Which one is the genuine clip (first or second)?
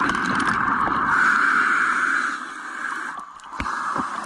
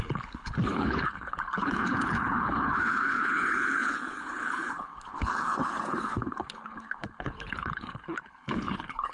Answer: first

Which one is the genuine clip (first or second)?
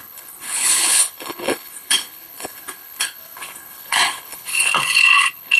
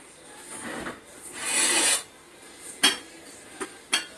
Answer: second